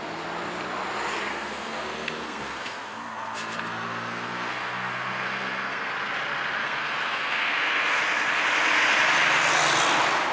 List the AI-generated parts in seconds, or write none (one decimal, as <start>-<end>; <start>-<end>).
1.3-5.9; 6.6-8.0